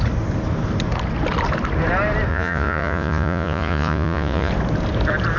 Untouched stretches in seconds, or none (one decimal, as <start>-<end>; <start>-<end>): 0.0-2.3; 4.5-5.4